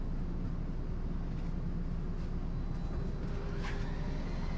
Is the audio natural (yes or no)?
yes